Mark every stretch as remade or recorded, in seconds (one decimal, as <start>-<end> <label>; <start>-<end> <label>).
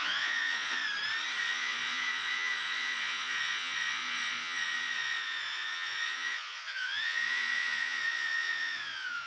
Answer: 0.0-0.8 remade; 0.8-1.4 recorded; 1.4-9.3 remade